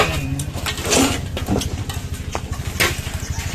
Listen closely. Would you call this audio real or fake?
real